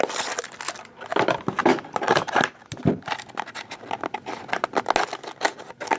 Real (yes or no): yes